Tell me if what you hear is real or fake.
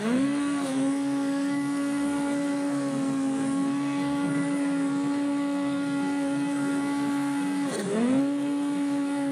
fake